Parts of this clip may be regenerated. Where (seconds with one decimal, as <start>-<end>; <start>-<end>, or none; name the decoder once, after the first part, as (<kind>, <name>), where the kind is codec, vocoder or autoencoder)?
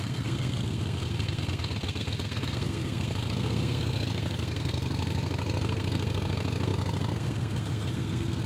0.0-8.5 (codec, SNAC)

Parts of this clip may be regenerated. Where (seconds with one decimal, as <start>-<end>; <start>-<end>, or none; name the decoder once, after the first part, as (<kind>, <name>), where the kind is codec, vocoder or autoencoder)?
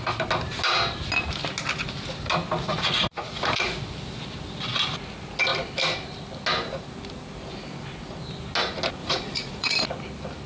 2.7-3.5 (vocoder, Vocos); 9.0-9.8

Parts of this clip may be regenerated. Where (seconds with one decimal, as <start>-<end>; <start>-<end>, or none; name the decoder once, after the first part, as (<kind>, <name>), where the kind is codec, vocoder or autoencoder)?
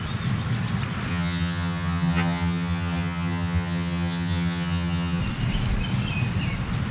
1.1-5.2 (vocoder, HiFi-GAN)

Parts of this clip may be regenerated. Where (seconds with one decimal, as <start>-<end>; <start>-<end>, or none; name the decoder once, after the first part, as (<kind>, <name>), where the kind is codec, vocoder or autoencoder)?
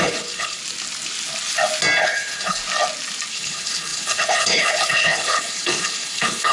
0.0-0.6 (codec, HILCodec); 2.0-2.6; 3.3-6.5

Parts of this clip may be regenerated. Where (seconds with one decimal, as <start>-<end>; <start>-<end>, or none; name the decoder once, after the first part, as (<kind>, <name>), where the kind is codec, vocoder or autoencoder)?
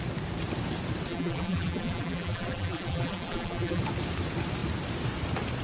1.1-3.8 (vocoder, BigVGAN v2)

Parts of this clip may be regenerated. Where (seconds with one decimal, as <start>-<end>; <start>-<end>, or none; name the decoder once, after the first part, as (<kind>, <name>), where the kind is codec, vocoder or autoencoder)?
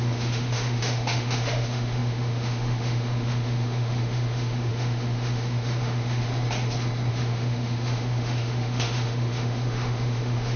0.0-6.3 (autoencoder, DAC-VAE); 7.1-10.6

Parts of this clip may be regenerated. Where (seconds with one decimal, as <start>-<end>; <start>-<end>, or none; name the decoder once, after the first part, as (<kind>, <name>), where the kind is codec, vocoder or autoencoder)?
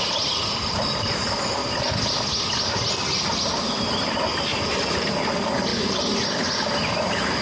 0.0-1.6 (vocoder, BigVGAN v2); 4.7-7.4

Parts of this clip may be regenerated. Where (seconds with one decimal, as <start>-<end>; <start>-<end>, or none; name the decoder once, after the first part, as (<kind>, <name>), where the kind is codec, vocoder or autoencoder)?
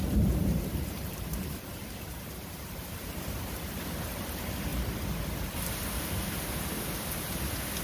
0.0-4.7 (vocoder, BigVGAN v2)